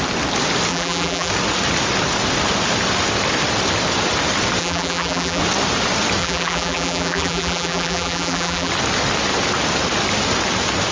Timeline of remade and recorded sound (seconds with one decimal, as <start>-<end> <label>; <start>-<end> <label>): 0.0-0.7 recorded; 0.7-1.3 remade; 1.3-4.6 recorded; 4.6-5.4 remade; 5.4-6.2 recorded; 6.2-8.7 remade; 8.7-10.9 recorded